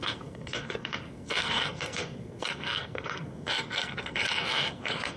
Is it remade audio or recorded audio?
remade